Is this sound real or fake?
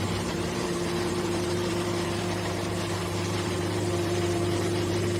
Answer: fake